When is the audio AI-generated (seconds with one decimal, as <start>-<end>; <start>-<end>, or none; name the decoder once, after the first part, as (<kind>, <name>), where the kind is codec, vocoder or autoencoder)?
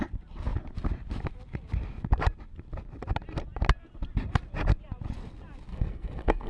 5.7-6.5 (codec, SNAC)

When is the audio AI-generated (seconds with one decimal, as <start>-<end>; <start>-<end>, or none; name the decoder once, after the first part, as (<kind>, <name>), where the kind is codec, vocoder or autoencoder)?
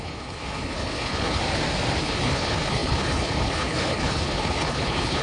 0.0-1.4 (codec, HILCodec); 2.0-5.2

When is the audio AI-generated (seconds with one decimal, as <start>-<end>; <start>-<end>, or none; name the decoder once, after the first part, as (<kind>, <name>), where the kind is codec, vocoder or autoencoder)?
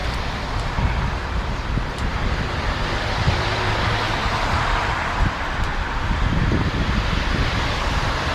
0.0-8.3 (vocoder, BigVGAN v2)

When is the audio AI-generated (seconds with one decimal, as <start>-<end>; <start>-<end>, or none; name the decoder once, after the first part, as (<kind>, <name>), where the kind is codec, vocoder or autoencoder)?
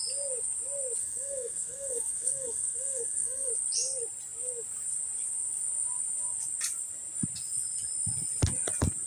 1.0-3.5 (codec, SNAC)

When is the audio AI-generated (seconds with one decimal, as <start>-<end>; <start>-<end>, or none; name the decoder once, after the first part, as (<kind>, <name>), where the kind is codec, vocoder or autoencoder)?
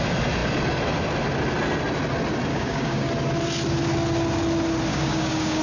2.5-3.1 (codec, DAC); 4.9-5.6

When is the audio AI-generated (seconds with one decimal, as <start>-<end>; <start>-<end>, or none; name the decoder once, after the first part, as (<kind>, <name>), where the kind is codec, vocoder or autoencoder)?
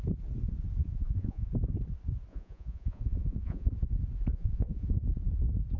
0.8-1.5 (vocoder, Vocos); 2.3-3.7; 4.3-5.0